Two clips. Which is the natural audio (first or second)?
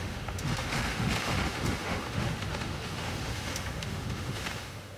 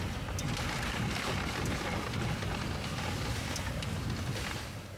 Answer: second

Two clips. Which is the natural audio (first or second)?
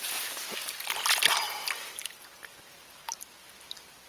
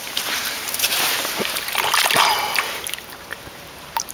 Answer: first